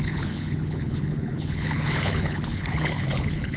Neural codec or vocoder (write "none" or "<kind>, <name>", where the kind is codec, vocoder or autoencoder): codec, HILCodec